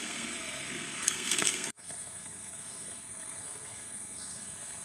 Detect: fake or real fake